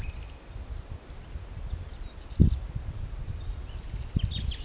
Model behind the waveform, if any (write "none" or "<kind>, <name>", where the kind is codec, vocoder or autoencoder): none